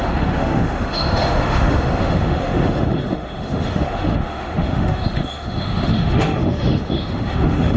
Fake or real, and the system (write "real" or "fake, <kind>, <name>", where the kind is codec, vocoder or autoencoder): fake, autoencoder, DAC-VAE